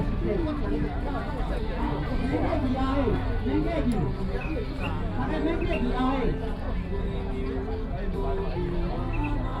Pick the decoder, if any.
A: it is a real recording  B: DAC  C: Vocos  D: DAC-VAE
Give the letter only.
A